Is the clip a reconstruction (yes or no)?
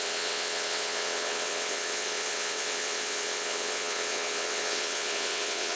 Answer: yes